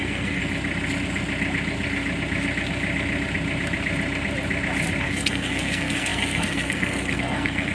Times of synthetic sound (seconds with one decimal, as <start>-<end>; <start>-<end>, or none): 0.0-0.4; 5.0-7.7